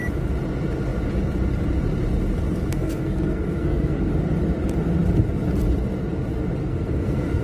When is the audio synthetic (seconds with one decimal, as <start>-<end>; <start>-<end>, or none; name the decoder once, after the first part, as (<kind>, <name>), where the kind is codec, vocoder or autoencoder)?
2.7-4.1 (codec, SNAC); 6.6-7.4